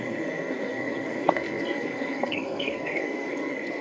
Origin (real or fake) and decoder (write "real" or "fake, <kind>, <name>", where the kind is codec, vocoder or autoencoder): fake, codec, SNAC